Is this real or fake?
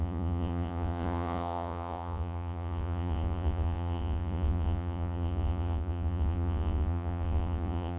fake